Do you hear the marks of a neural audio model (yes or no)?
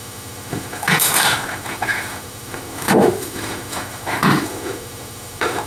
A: yes